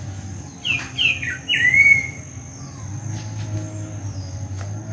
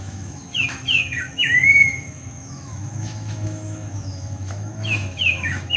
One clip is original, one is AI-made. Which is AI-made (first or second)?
second